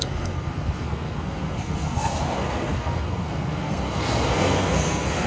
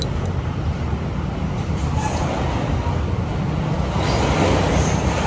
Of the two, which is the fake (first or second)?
first